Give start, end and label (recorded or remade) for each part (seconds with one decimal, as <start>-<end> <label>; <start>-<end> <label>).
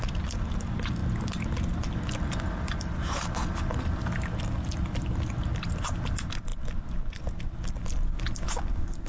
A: 0.0-9.1 recorded